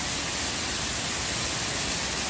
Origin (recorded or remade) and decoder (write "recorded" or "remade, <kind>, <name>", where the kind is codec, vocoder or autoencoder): recorded